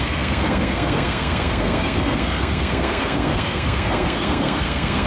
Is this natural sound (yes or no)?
no